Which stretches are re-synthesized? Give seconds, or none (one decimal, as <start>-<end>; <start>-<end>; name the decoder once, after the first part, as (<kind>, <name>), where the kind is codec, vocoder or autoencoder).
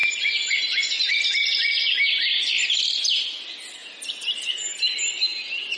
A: none